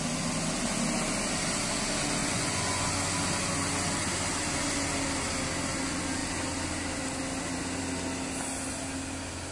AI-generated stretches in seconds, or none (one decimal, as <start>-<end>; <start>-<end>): 2.2-2.9